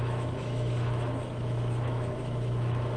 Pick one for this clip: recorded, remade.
remade